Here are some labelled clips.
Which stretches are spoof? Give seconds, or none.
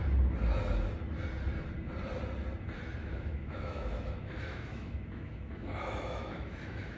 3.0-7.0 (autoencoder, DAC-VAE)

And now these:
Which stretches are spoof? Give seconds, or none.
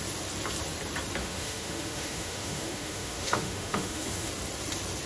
1.2-4.3 (autoencoder, DAC-VAE)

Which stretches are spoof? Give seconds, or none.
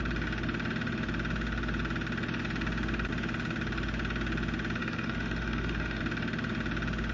4.8-6.0 (autoencoder, DAC-VAE)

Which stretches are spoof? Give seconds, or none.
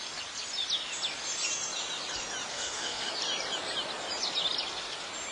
2.5-3.1 (autoencoder, DAC-VAE)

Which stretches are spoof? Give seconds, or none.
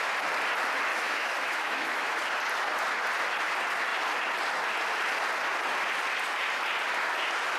0.9-2.2 (autoencoder, DAC-VAE)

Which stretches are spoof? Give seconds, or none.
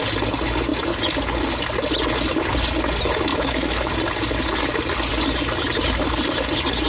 3.3-3.9 (autoencoder, DAC-VAE)